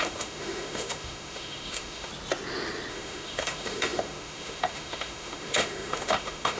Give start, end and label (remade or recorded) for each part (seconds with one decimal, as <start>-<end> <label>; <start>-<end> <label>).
0.0-2.1 remade; 2.1-2.9 recorded; 2.9-6.6 remade